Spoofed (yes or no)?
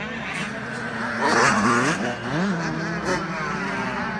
no